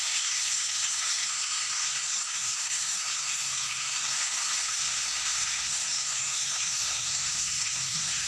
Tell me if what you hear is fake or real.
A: fake